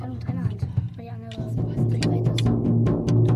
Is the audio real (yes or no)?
yes